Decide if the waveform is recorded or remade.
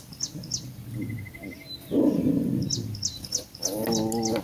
recorded